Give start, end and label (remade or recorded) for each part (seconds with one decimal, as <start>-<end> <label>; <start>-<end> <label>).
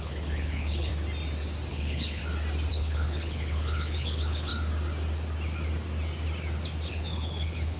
0.0-0.9 remade; 0.9-1.7 recorded; 1.7-2.2 remade; 2.2-2.7 recorded; 2.7-4.5 remade; 4.5-6.9 recorded; 6.9-7.8 remade